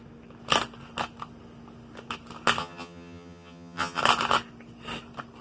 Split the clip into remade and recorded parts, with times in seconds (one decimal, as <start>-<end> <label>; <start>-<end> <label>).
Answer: 0.0-2.6 recorded; 2.6-4.0 remade; 4.0-5.4 recorded